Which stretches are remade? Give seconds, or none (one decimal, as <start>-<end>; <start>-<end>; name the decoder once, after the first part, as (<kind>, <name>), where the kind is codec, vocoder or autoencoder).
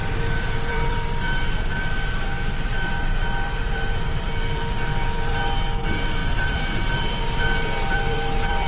0.0-8.7 (vocoder, BigVGAN v2)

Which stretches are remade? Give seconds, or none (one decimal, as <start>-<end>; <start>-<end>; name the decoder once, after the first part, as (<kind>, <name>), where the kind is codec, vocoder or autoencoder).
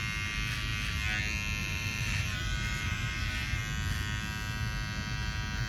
1.6-3.6 (vocoder, BigVGAN v2)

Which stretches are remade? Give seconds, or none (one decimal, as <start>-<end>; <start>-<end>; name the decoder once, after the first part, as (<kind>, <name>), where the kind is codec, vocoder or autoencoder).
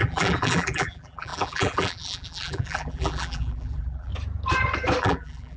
0.0-4.1 (vocoder, BigVGAN v2); 5.0-5.6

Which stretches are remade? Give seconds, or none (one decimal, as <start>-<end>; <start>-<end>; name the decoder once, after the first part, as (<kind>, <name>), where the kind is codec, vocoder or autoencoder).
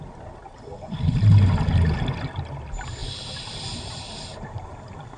3.0-4.8 (vocoder, BigVGAN v2)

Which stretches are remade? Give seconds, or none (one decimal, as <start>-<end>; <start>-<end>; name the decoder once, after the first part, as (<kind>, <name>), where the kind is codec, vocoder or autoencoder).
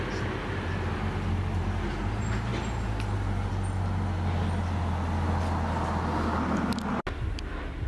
none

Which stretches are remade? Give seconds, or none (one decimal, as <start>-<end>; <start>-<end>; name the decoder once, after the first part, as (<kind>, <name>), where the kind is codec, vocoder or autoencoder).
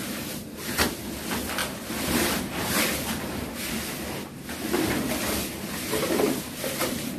1.6-2.7 (vocoder, BigVGAN v2)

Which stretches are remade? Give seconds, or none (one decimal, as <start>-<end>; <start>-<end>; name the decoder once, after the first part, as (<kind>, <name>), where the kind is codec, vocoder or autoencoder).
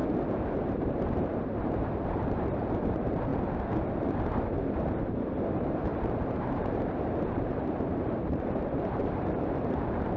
0.0-3.3 (vocoder, BigVGAN v2); 4.9-10.2